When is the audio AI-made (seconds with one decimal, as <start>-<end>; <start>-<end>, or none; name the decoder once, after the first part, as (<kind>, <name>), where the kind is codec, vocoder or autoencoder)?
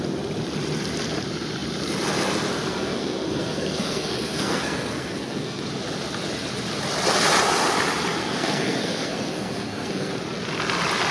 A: 2.7-5.6 (codec, SNAC); 8.2-10.1